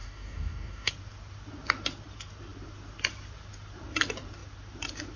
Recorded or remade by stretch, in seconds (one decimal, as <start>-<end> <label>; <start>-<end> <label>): 0.0-0.9 remade; 0.9-5.2 recorded